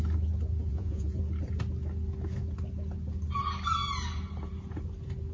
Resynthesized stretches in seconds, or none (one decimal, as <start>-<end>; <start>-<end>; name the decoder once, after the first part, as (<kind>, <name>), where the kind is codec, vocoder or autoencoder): 0.7-1.2 (vocoder, Vocos)